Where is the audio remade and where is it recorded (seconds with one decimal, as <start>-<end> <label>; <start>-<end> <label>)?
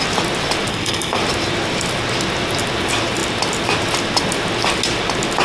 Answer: 0.0-0.7 recorded; 0.7-1.2 remade; 1.2-5.4 recorded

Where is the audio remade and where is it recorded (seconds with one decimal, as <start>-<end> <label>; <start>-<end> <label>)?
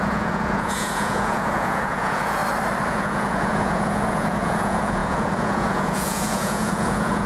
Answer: 0.0-2.4 remade; 2.4-2.9 recorded; 2.9-7.3 remade